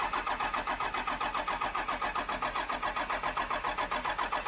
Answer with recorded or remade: recorded